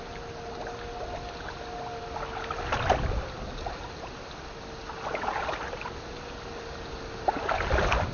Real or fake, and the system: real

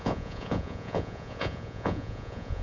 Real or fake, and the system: fake, vocoder, Vocos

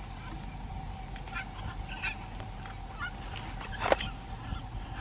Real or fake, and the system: real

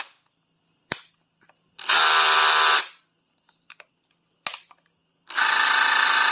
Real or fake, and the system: real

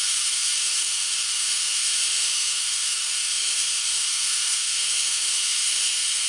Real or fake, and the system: fake, autoencoder, DAC-VAE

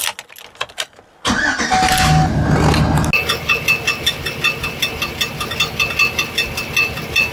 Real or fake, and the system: real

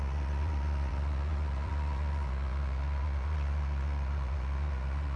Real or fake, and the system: fake, vocoder, Vocos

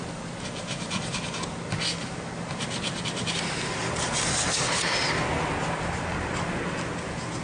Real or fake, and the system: real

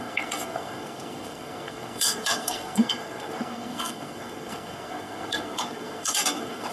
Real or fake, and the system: fake, codec, SNAC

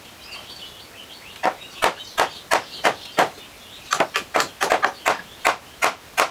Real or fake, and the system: real